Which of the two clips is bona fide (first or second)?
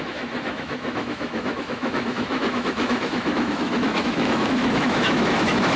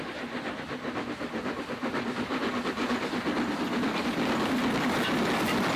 second